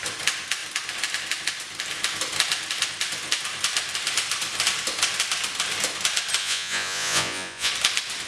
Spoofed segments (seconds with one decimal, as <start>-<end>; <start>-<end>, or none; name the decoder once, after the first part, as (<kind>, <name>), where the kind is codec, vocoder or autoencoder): 6.4-7.7 (vocoder, Vocos)

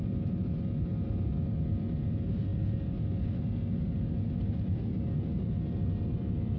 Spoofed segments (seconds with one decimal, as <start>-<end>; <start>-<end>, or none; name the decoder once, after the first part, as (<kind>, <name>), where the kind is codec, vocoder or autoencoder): none

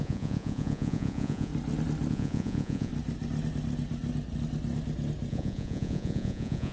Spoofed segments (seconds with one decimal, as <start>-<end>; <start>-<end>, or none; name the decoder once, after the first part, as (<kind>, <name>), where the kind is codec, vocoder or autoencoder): 0.0-1.5 (vocoder, Vocos); 2.1-2.9; 5.3-6.7

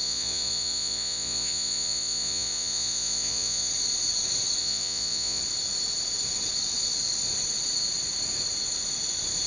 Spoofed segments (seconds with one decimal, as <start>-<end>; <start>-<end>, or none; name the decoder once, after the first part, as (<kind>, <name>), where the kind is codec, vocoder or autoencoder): 0.0-3.7 (vocoder, Vocos); 4.6-5.4

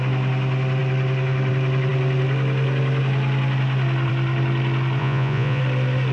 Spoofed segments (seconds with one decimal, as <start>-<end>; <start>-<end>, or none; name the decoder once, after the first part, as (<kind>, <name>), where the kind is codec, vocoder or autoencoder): 5.0-5.6 (vocoder, Vocos)

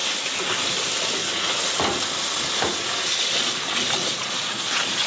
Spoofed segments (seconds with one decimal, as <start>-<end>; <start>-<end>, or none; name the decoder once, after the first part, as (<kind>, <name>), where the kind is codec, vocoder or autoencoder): 4.0-5.1 (vocoder, Vocos)